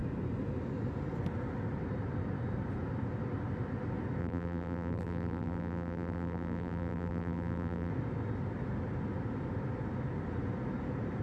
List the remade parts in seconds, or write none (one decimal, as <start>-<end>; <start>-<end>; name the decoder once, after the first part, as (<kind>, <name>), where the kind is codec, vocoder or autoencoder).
4.2-7.9 (vocoder, BigVGAN v2)